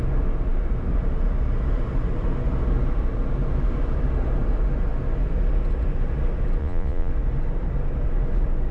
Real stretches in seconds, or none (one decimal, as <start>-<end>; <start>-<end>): 0.0-6.6; 7.1-8.7